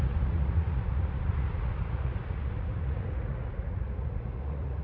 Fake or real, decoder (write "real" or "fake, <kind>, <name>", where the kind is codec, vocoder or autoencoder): fake, vocoder, Vocos